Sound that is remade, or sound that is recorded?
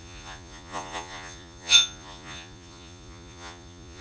remade